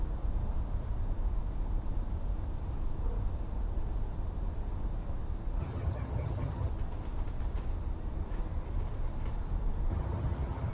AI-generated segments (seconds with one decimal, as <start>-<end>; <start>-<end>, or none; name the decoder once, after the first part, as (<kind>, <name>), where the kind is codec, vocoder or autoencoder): 5.6-6.7 (vocoder, HiFi-GAN); 9.9-10.7